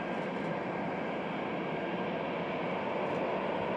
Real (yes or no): yes